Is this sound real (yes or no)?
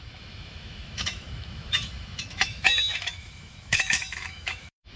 no